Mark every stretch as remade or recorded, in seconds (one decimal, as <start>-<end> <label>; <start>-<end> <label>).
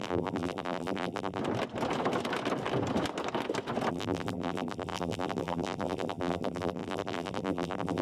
0.0-1.4 remade; 1.4-3.9 recorded; 3.9-8.0 remade